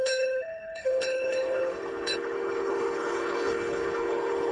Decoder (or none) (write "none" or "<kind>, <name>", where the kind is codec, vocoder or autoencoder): codec, HILCodec